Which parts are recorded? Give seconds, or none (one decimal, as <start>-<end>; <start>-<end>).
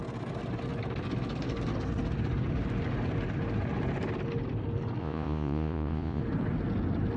0.0-5.0; 6.2-7.2